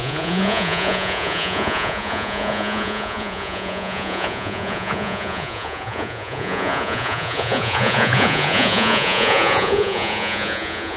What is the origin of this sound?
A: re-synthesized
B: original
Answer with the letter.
A